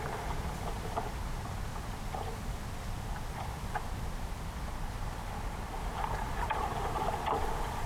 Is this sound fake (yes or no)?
yes